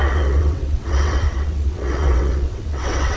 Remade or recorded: remade